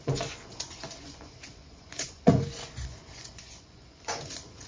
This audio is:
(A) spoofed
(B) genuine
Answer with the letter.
A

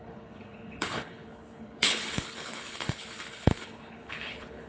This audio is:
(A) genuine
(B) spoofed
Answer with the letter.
B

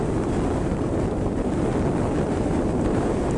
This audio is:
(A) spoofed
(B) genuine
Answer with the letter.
B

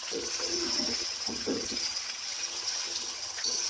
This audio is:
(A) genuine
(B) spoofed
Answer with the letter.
B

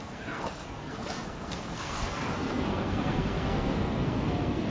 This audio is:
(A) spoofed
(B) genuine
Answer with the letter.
A